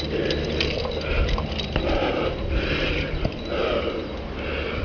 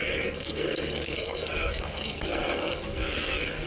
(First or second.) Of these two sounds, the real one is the first